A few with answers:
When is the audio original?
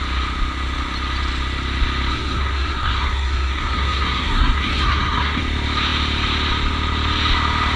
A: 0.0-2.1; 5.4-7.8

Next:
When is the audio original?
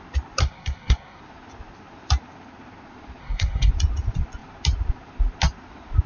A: 0.0-0.4; 1.2-3.2; 3.7-6.1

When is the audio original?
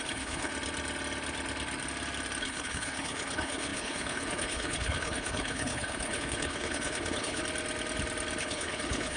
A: 0.5-2.4; 7.4-8.4